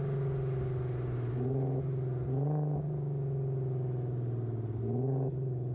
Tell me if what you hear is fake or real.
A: real